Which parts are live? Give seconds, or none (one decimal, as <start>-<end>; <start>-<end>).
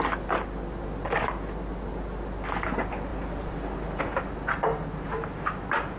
0.0-6.0